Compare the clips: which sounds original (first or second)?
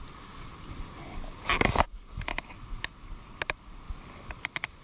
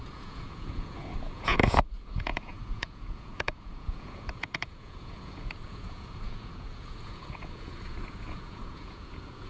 first